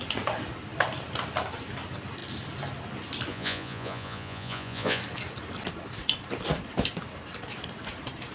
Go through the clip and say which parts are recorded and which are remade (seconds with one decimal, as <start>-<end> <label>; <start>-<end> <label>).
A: 0.0-3.3 recorded; 3.3-5.0 remade; 5.0-8.3 recorded